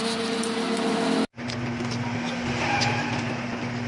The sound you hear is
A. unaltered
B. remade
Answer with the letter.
A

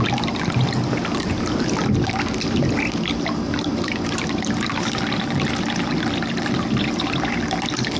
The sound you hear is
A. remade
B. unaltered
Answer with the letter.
B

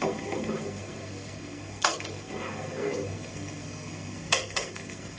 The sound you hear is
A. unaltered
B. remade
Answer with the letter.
B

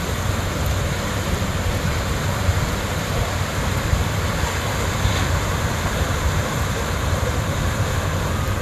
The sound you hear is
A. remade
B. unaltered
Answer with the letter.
A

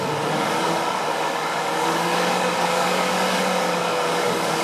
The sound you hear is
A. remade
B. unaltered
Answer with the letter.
A